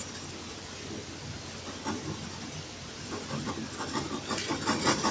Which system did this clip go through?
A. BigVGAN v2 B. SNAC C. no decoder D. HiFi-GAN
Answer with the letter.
C